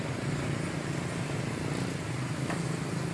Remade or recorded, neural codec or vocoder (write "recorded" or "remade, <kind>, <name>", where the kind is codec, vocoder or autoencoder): recorded